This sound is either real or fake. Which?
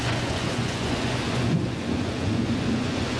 fake